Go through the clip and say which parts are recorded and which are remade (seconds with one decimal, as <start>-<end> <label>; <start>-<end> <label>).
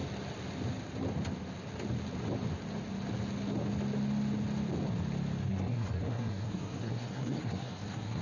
0.0-5.5 recorded; 5.5-8.2 remade